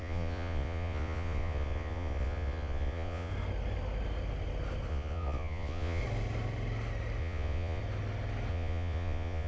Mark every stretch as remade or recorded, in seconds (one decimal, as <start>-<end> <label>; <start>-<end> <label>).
0.0-3.3 remade; 3.3-4.9 recorded; 4.9-6.0 remade; 6.0-7.2 recorded; 7.2-7.8 remade; 7.8-8.5 recorded; 8.5-9.5 remade